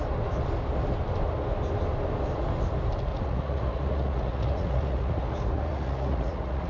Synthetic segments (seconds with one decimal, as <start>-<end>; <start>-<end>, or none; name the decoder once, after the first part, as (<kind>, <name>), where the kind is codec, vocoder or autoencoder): 3.1-6.7 (vocoder, Vocos)